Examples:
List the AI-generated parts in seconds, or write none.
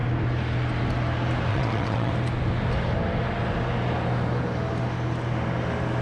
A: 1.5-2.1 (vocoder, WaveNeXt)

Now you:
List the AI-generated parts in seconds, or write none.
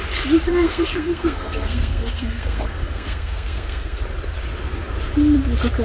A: 0.5-4.0 (codec, SNAC)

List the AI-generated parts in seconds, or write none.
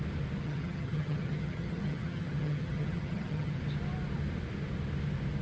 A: 0.4-3.6 (vocoder, HiFi-GAN)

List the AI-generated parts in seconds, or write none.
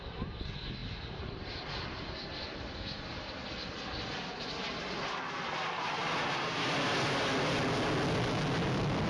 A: none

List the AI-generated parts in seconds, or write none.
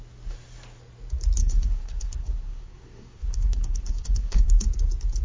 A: 1.4-4.5 (codec, SNAC)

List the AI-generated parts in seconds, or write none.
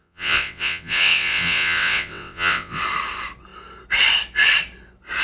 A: 0.0-2.8 (vocoder, WaveNeXt)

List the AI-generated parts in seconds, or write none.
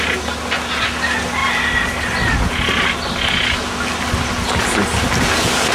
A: none